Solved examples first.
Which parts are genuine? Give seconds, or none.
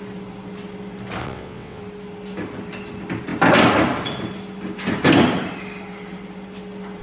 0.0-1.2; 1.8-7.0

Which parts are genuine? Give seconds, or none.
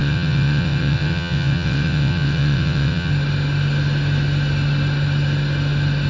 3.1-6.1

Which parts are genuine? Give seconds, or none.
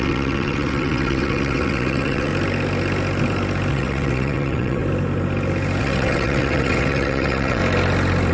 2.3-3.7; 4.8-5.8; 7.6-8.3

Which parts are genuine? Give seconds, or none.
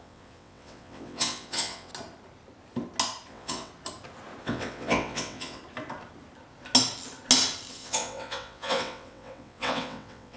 1.9-3.3; 3.7-4.4; 5.6-7.7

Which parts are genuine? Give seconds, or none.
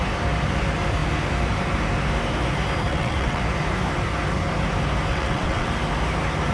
0.0-2.9; 3.4-5.1; 5.7-6.5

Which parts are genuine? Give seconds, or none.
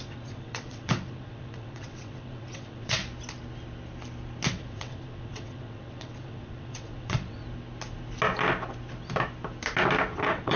3.0-4.5; 7.4-10.1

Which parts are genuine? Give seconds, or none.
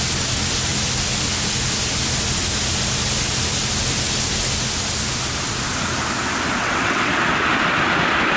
0.0-6.6; 7.1-8.4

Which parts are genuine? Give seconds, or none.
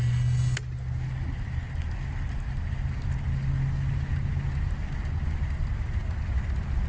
0.0-6.9